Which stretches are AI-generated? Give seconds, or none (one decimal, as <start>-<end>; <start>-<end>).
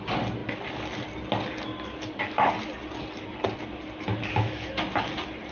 4.1-4.8